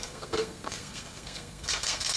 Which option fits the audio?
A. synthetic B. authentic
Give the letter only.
A